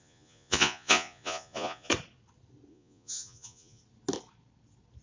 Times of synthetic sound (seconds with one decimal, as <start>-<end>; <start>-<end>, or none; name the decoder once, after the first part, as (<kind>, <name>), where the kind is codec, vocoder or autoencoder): 0.0-1.9 (vocoder, Vocos); 2.7-3.8